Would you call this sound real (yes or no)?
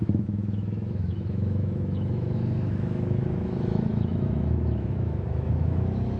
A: no